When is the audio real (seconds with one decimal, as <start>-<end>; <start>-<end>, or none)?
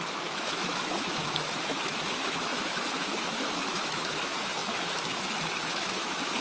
none